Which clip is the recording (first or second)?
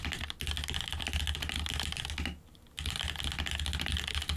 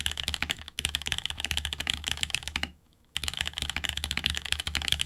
first